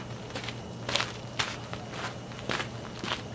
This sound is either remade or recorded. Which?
recorded